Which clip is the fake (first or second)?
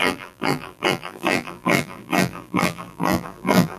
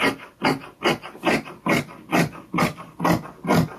first